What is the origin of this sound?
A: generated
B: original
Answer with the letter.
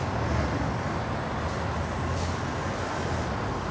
B